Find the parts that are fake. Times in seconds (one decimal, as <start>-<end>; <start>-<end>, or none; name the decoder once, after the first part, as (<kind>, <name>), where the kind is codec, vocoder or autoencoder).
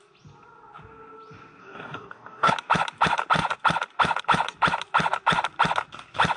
1.6-2.5 (codec, DAC)